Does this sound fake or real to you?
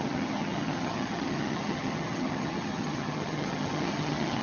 fake